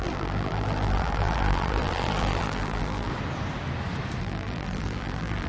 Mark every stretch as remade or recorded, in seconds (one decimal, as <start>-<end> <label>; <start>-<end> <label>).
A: 0.0-3.1 remade; 3.1-4.2 recorded; 4.2-5.5 remade